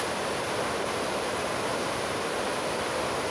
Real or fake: real